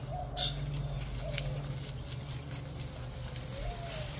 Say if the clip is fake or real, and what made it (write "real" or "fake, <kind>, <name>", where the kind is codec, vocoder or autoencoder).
real